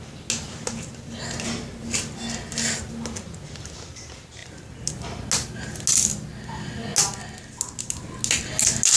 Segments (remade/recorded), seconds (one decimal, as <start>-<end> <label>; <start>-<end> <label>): 0.0-9.0 recorded